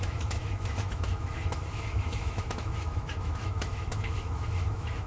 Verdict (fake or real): fake